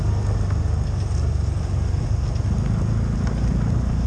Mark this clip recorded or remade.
recorded